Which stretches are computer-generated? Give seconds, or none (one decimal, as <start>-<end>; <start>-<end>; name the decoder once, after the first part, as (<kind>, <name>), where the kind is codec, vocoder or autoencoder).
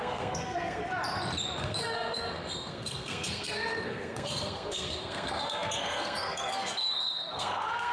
0.0-0.8 (codec, SNAC); 1.6-7.9